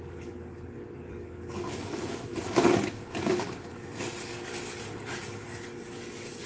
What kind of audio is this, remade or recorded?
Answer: remade